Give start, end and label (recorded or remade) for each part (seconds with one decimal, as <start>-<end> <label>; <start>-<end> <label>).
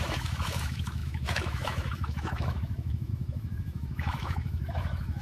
0.0-5.2 remade